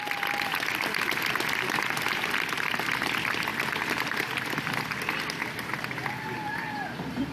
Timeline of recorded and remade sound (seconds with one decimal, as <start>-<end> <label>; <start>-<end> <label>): 0.0-7.3 recorded

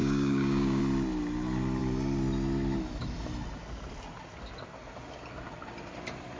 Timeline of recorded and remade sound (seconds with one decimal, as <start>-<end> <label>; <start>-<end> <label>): 0.0-0.8 remade; 0.8-6.4 recorded